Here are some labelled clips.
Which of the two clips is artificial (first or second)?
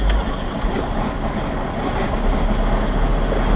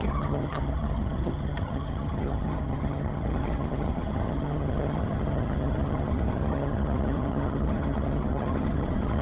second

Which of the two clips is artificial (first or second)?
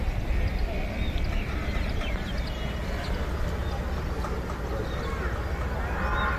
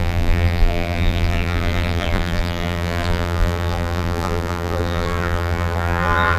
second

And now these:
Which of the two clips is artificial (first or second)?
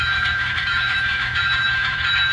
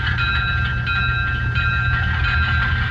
first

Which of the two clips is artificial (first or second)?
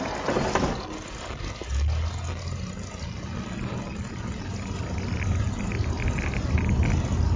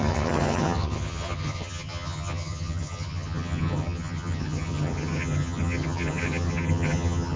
second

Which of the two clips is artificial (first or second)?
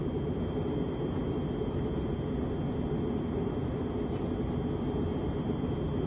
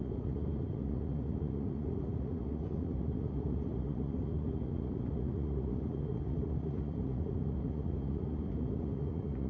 second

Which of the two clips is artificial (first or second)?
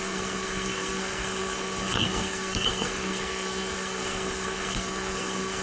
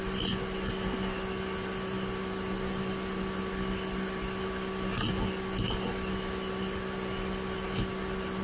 first